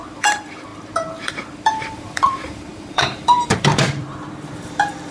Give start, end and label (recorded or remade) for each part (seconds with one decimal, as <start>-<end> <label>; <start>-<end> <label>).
0.0-5.1 remade